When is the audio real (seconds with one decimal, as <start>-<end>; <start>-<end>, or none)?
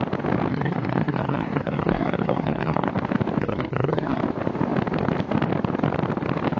0.0-0.5; 2.9-3.4; 4.2-6.6